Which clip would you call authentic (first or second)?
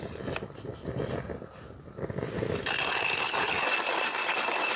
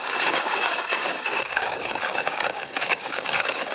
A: first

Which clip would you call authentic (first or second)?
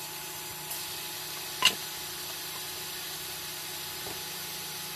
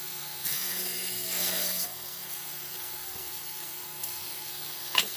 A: first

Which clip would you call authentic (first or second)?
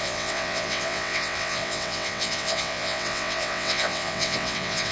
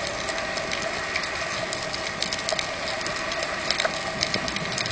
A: second